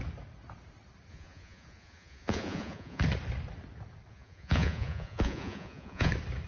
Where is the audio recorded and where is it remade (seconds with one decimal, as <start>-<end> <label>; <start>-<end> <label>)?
0.0-1.1 recorded; 1.1-3.0 remade; 3.0-4.1 recorded; 4.1-6.1 remade; 6.1-6.5 recorded